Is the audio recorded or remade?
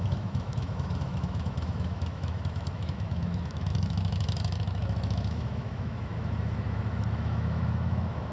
remade